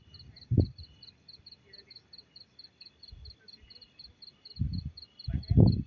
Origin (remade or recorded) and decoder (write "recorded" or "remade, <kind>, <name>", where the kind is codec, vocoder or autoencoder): recorded